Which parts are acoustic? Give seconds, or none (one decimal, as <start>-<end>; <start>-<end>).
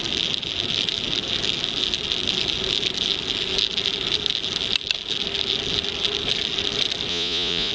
0.0-7.1